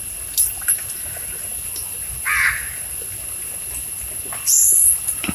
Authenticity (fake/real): real